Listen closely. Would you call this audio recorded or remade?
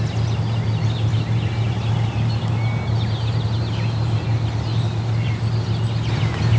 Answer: recorded